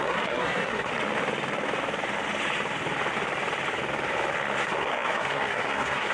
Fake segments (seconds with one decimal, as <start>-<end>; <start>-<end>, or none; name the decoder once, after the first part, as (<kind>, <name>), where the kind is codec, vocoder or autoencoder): 0.0-0.9 (codec, SNAC); 4.6-6.1

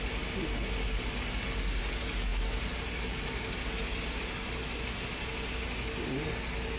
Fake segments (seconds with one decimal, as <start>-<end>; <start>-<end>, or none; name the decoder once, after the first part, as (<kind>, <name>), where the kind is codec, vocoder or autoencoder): none

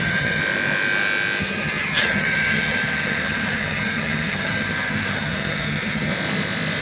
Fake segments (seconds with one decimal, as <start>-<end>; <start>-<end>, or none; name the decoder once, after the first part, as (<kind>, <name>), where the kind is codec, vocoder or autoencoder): 0.0-0.4 (vocoder, HiFi-GAN); 1.4-6.1